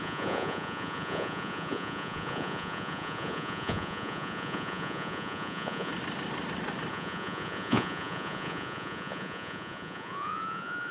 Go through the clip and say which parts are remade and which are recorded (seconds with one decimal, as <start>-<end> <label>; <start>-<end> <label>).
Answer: 0.0-5.9 remade; 5.9-6.9 recorded; 6.9-10.9 remade